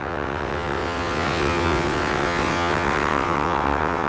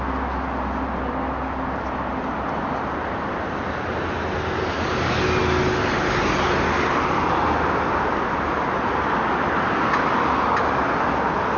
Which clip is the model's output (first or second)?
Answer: first